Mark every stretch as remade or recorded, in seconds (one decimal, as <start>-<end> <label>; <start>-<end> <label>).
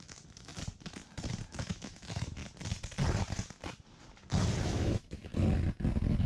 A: 0.0-0.5 remade; 0.5-1.5 recorded; 1.5-2.4 remade; 2.4-4.6 recorded; 4.6-5.3 remade; 5.3-6.3 recorded